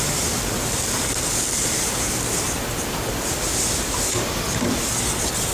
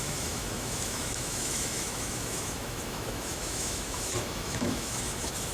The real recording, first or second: first